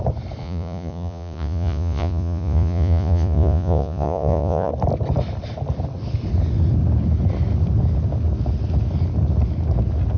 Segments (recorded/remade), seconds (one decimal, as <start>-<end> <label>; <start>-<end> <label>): 0.0-0.4 recorded; 0.4-4.7 remade; 4.7-10.2 recorded